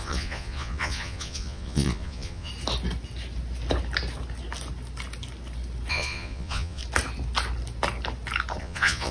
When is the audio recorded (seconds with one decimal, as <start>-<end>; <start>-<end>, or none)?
2.5-5.9; 6.8-8.6